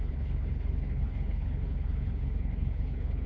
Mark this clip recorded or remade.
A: remade